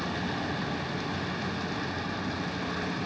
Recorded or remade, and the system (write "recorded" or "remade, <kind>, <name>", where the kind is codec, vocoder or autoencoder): recorded